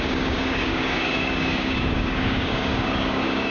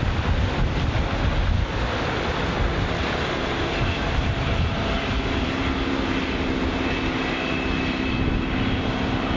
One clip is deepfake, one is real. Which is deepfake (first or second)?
first